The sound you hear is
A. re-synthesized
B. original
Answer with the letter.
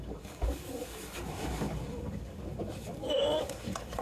A